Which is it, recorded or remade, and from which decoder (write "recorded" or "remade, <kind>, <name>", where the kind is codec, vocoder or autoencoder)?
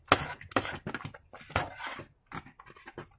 recorded